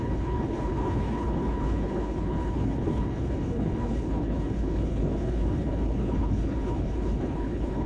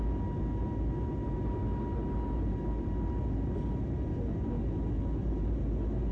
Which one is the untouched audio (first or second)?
second